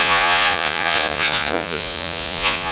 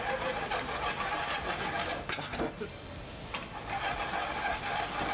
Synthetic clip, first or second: first